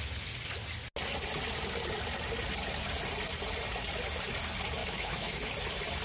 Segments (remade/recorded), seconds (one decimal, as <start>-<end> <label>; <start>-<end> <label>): 0.0-4.8 recorded; 4.8-5.5 remade; 5.5-6.0 recorded